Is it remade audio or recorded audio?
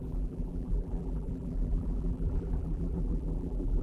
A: remade